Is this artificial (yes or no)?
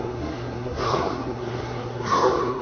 yes